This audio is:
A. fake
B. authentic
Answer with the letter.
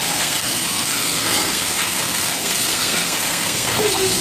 A